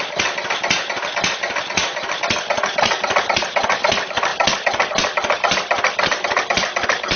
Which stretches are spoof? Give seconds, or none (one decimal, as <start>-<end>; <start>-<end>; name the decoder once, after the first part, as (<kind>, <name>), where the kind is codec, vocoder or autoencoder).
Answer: none